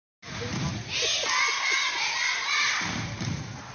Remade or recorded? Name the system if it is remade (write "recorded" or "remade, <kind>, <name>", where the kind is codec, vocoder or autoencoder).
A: recorded